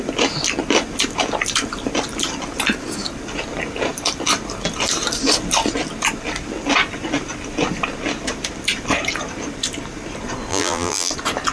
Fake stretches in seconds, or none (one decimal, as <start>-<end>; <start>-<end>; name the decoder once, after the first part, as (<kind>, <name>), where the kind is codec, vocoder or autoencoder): 10.5-11.1 (vocoder, BigVGAN v2)

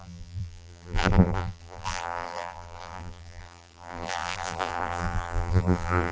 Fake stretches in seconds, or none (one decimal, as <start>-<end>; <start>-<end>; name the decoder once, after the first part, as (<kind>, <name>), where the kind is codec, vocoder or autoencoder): 0.0-6.1 (vocoder, BigVGAN v2)

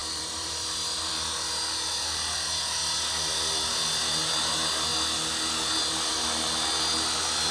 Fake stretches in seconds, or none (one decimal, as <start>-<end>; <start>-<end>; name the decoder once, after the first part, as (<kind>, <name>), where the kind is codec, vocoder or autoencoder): 0.0-1.1 (vocoder, BigVGAN v2)

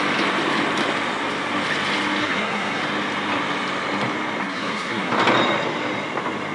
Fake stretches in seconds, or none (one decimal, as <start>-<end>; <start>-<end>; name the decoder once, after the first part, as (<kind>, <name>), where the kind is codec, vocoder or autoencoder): 2.2-2.8 (codec, SNAC); 4.4-5.1

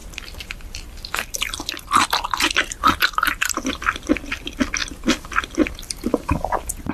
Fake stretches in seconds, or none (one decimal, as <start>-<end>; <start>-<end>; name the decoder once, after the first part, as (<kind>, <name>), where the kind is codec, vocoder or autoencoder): 0.0-4.8 (vocoder, BigVGAN v2); 5.4-6.9

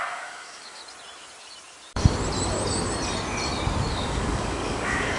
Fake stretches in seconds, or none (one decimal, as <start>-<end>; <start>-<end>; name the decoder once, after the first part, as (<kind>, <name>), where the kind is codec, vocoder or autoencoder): 0.0-0.8 (codec, DAC); 3.9-5.2